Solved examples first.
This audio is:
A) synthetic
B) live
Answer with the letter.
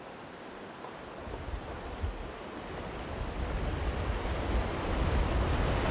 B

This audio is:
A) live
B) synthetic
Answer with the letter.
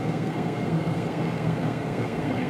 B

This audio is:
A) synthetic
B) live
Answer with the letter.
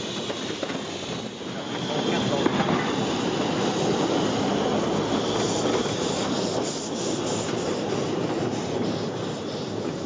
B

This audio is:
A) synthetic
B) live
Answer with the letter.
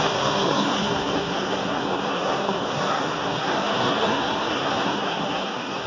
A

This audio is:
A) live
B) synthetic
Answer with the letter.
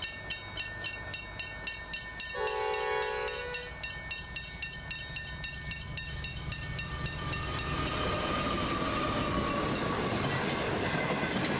A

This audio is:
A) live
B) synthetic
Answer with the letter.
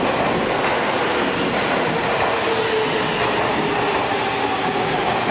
A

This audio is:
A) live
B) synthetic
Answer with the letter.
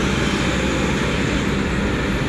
A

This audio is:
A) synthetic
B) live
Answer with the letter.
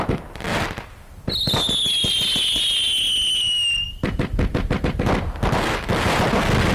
B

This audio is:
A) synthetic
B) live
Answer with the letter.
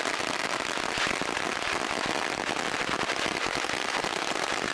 B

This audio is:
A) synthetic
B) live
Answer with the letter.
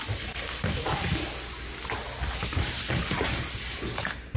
B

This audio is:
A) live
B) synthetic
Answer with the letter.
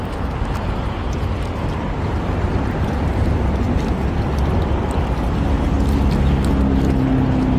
A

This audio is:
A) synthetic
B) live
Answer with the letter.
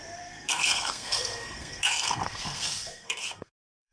A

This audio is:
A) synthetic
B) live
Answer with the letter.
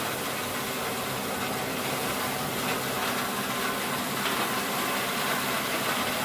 B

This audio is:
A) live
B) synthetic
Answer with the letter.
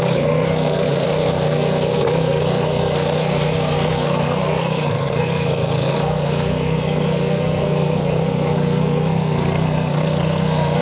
B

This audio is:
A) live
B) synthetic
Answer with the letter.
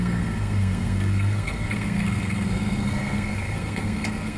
B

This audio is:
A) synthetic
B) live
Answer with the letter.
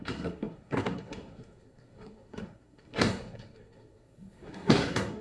A